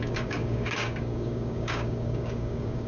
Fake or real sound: fake